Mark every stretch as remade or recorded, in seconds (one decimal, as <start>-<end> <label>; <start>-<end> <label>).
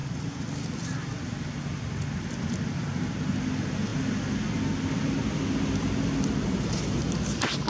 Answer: 0.0-7.7 recorded